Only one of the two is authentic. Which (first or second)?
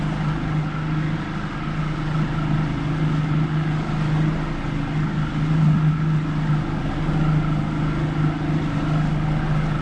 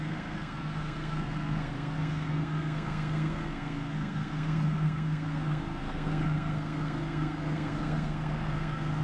first